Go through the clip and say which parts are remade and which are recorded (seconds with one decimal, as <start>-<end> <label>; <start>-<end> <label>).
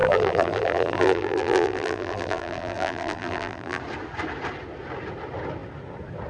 0.0-3.8 remade; 3.8-6.3 recorded